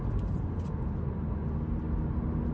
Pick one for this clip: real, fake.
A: real